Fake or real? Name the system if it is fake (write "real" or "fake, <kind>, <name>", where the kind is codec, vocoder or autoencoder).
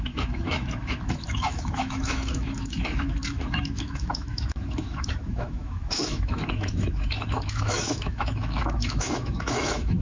fake, autoencoder, DAC-VAE